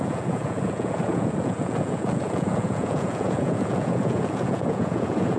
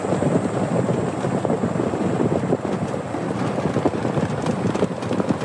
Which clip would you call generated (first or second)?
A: first